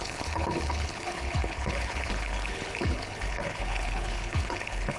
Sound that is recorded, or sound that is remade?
remade